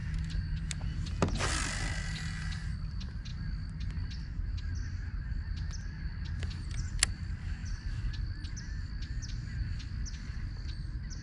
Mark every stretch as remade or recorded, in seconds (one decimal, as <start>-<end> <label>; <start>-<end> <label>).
0.0-0.6 remade; 0.6-11.2 recorded